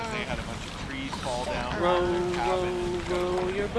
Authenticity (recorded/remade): recorded